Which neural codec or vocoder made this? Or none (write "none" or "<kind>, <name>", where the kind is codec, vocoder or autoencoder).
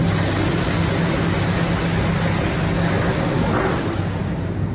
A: none